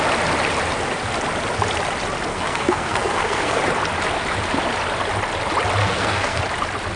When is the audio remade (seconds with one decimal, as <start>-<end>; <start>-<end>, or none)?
2.3-3.6; 5.8-6.4